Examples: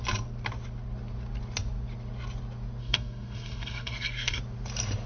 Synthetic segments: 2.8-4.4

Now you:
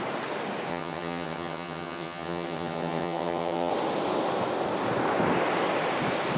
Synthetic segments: 0.7-3.7

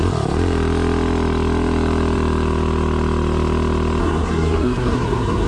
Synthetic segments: 4.0-5.5

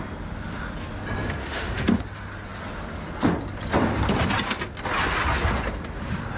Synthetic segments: 1.4-2.0

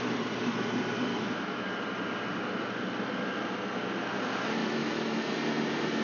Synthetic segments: 1.1-1.7; 4.6-5.2

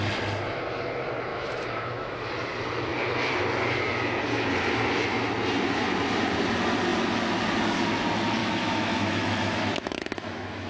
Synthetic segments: 1.3-2.3; 8.4-10.7